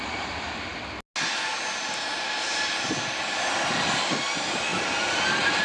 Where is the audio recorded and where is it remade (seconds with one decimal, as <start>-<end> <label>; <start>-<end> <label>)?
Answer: 0.0-5.6 recorded